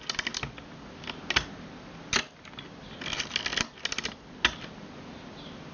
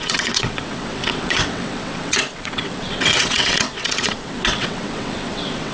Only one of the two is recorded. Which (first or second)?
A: first